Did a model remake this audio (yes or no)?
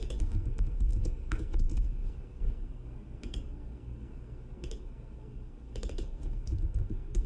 yes